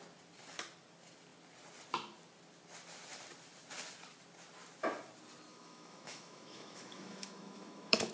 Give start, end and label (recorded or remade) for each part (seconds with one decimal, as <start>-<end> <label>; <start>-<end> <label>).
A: 0.0-5.5 recorded; 5.5-8.1 remade